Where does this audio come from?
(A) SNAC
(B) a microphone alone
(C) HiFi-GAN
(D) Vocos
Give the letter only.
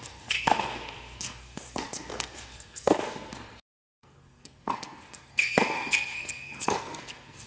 A